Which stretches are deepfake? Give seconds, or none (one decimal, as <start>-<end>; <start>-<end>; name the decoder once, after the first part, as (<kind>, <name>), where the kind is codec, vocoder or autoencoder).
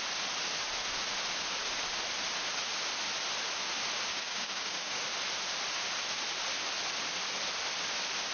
4.1-5.0 (codec, DAC)